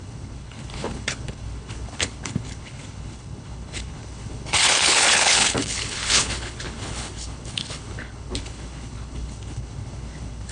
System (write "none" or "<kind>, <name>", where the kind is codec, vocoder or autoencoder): codec, HILCodec